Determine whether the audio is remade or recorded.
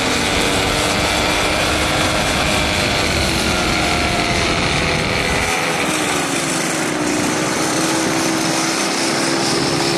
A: recorded